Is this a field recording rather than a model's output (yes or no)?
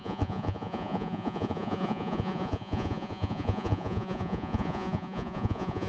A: no